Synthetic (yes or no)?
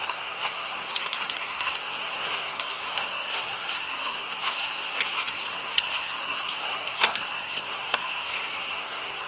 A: yes